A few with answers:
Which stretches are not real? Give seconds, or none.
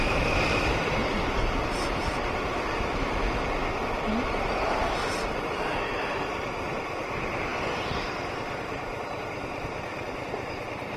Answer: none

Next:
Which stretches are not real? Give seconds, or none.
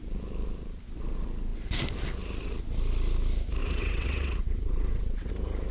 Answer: 3.6-5.3 (vocoder, WaveNeXt)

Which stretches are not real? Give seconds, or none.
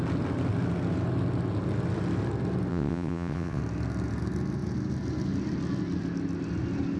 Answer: 2.7-3.6 (vocoder, WaveNeXt)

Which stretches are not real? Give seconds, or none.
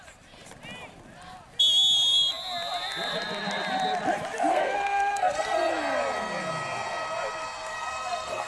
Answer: 4.5-5.7 (codec, SNAC); 7.7-8.5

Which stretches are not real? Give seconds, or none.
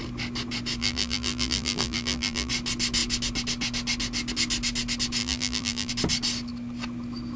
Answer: 0.8-2.5 (vocoder, BigVGAN v2); 5.2-5.9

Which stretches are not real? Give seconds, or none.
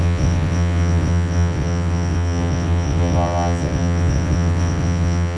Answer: 0.0-5.4 (vocoder, WaveNeXt)